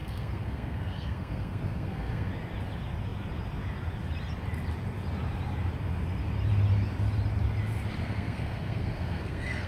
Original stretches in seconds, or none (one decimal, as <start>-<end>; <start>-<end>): 2.3-8.0